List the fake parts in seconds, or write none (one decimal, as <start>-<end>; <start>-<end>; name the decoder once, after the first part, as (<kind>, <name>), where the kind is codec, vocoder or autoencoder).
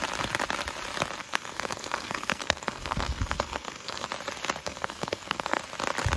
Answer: 1.2-4.1 (codec, SNAC); 4.6-5.6